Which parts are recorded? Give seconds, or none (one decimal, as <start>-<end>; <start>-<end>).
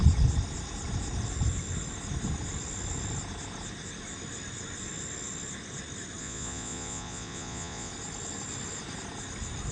0.0-6.2; 7.9-9.7